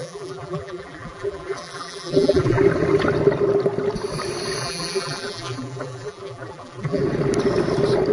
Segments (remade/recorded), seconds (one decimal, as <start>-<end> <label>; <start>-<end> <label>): 0.0-2.6 remade; 2.6-4.6 recorded; 4.6-7.0 remade; 7.0-8.1 recorded